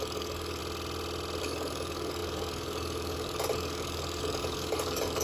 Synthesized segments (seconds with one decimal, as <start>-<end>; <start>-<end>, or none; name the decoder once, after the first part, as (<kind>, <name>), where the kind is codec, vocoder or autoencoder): 0.0-0.6 (codec, DAC); 1.4-5.2